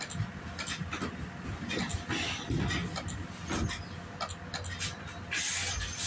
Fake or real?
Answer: real